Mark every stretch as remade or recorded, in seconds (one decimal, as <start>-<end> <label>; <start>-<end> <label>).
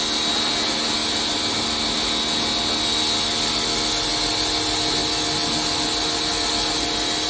0.0-7.3 recorded